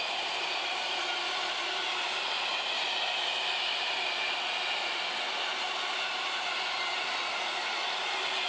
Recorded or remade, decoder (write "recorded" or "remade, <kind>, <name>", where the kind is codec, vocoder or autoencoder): recorded